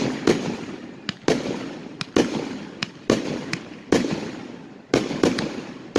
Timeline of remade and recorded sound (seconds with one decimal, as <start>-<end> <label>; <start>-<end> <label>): 0.0-6.0 recorded